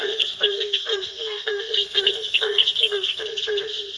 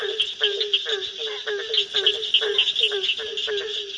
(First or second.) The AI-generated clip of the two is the first